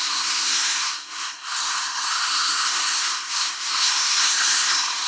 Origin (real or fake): fake